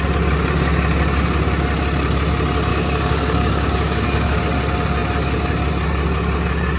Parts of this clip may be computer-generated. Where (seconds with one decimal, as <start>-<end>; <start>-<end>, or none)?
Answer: 2.7-4.4